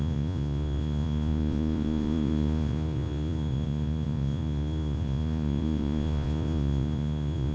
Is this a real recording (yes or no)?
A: no